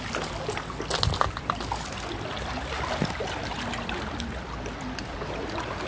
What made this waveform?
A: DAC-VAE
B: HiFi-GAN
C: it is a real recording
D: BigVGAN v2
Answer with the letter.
C